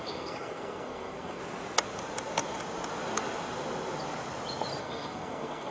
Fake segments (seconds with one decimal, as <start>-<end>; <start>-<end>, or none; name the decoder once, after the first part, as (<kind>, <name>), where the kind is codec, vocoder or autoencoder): 0.0-1.4 (codec, SNAC); 4.8-5.7

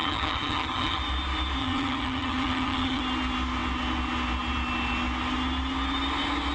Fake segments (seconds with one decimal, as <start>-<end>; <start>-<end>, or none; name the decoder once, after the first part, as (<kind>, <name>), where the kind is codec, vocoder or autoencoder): 0.0-1.0 (vocoder, HiFi-GAN); 1.6-3.0